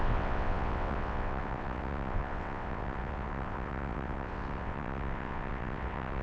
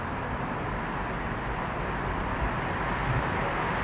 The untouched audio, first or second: second